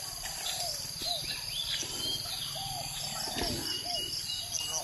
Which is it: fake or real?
real